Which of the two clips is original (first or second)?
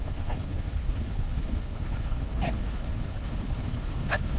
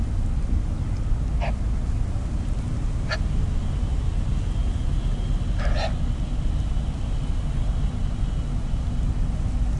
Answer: second